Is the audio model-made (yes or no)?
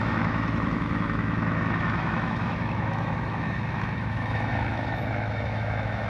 yes